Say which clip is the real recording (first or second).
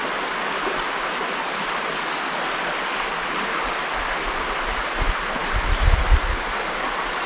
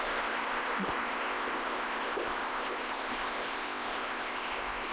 first